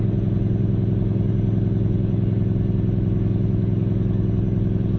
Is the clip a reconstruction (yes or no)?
no